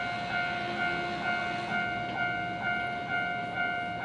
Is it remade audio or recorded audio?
recorded